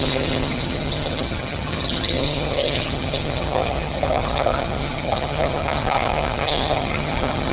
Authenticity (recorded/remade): remade